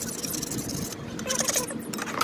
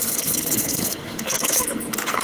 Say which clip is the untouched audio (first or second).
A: first